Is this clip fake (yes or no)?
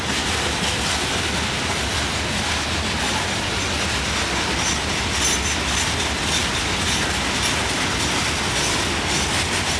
no